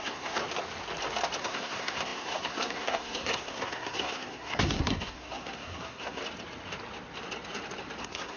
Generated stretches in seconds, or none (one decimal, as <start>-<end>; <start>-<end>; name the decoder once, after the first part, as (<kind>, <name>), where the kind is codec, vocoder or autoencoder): 0.0-0.4 (codec, SNAC); 1.4-6.2; 8.0-8.4